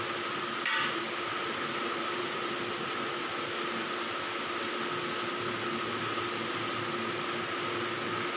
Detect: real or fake real